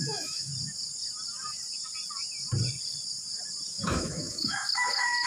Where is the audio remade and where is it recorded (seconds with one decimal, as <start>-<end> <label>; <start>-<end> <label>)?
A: 0.0-0.5 remade; 0.5-3.7 recorded; 3.7-5.3 remade